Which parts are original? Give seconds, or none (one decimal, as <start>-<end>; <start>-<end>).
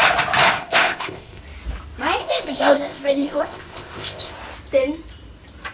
0.0-0.6; 1.4-2.2; 4.3-5.7